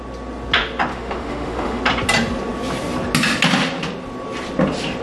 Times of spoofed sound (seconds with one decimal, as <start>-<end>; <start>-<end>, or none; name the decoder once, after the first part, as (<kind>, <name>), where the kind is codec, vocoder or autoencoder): 0.9-1.8 (autoencoder, DAC-VAE)